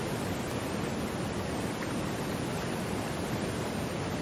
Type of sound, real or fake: real